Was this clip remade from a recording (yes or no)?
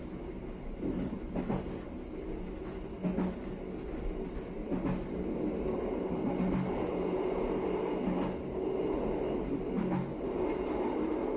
no